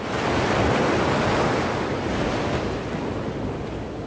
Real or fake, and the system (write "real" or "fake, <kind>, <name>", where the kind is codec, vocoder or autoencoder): real